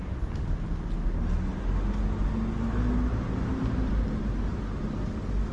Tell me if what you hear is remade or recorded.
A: recorded